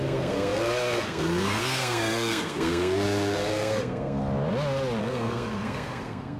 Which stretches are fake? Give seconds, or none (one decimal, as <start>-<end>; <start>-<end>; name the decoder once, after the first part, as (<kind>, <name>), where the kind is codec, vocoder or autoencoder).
0.0-4.2 (codec, SNAC); 5.0-6.4

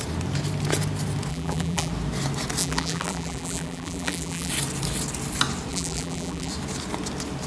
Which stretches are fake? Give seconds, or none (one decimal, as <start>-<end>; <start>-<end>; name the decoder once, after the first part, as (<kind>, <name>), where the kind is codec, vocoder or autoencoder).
1.3-1.9 (vocoder, BigVGAN v2); 2.6-4.5; 5.7-6.5

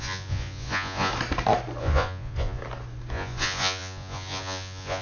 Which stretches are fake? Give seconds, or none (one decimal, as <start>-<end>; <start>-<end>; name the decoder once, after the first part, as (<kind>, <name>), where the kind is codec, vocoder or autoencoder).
0.0-1.1 (vocoder, Vocos); 1.8-2.6; 3.1-5.0

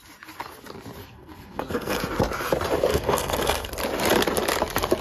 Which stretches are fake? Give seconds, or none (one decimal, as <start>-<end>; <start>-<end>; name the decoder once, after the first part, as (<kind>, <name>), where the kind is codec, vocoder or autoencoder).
1.0-2.0 (codec, SNAC); 2.9-3.7

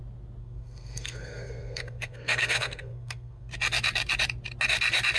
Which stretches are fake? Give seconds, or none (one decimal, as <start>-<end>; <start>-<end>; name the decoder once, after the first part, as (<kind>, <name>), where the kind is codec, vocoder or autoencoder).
0.4-3.5 (codec, SNAC)

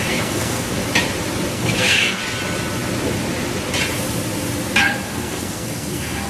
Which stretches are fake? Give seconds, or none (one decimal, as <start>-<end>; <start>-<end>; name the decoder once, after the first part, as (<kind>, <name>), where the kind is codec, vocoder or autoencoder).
0.0-0.8 (codec, SNAC); 1.5-2.2; 4.8-6.3